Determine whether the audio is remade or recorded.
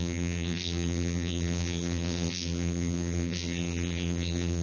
remade